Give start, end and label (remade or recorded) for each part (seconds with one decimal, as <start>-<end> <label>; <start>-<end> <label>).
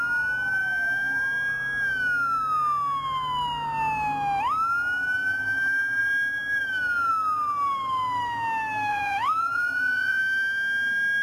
0.0-8.9 recorded; 8.9-10.2 remade; 10.2-11.2 recorded